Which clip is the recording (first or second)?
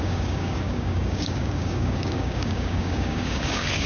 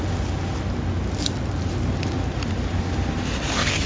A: second